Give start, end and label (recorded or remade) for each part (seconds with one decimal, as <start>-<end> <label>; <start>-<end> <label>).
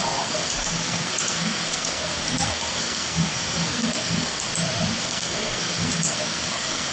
0.0-4.5 remade; 4.5-5.0 recorded; 5.0-6.9 remade